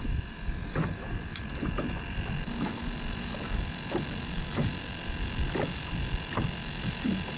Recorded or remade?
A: remade